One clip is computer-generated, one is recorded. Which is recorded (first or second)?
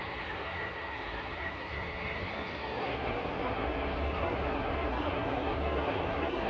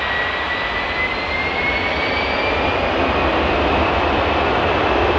second